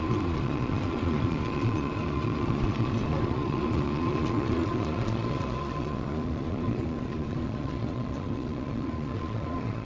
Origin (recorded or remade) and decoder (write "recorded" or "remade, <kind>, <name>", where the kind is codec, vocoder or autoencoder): remade, vocoder, Vocos